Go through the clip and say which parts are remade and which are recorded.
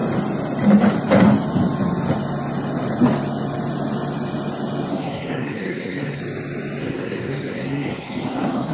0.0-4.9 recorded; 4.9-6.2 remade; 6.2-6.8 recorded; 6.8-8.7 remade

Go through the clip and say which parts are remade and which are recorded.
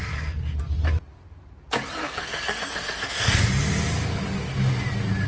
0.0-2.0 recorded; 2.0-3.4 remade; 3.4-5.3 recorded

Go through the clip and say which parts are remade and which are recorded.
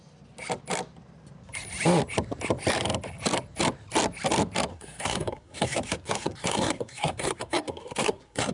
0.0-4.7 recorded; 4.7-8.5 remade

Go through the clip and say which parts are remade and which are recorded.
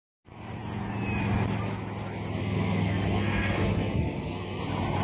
0.0-2.4 recorded; 2.4-4.6 remade; 4.6-5.0 recorded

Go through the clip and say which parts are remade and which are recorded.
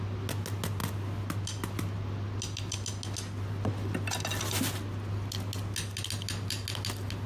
0.0-7.3 recorded